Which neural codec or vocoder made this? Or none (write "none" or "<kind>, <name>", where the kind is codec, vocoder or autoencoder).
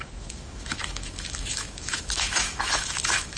autoencoder, DAC-VAE